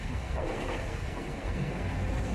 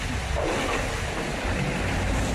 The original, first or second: second